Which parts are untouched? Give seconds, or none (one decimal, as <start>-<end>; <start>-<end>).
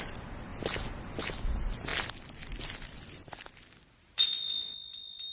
0.0-5.3